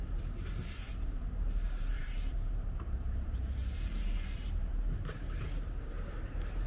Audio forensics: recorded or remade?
remade